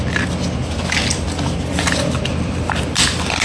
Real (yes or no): yes